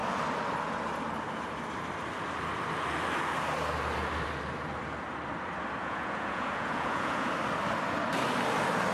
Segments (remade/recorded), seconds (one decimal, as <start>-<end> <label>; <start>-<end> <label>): 0.0-5.8 recorded; 5.8-7.3 remade; 7.3-8.9 recorded